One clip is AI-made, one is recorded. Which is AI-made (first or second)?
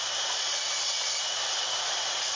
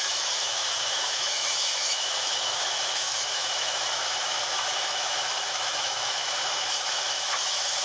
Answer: second